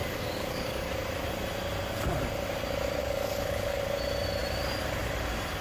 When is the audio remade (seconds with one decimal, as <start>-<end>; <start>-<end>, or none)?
0.0-0.9; 3.0-3.8